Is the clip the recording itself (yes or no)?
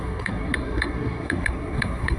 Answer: no